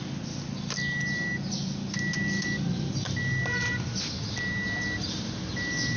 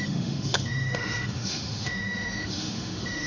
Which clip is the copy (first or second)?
second